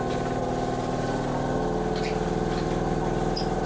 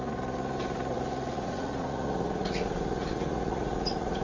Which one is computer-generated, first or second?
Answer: second